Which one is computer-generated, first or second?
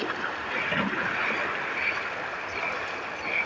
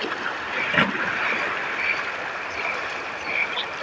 second